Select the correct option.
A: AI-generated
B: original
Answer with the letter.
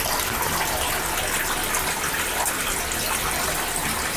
B